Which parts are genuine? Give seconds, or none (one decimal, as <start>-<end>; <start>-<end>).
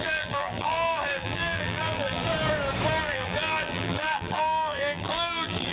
2.3-3.0